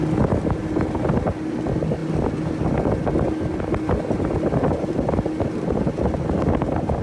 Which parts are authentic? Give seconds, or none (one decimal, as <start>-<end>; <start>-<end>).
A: 0.0-7.0